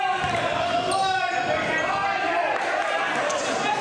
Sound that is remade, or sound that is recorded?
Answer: remade